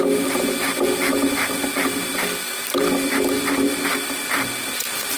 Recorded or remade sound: remade